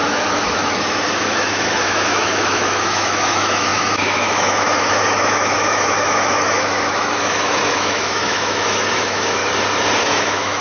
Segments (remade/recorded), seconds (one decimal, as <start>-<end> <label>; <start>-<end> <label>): 0.0-9.4 remade; 9.4-10.0 recorded; 10.0-10.6 remade